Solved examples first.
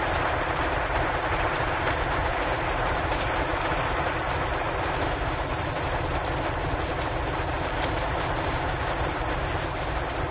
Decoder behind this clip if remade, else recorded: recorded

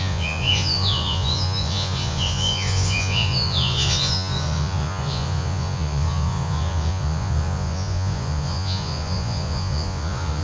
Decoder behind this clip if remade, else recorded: remade, vocoder, Vocos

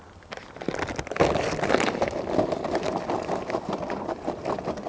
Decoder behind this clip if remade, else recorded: recorded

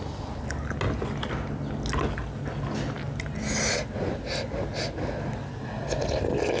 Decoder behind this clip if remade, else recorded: recorded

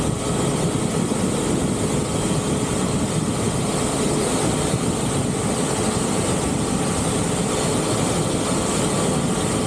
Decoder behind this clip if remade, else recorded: recorded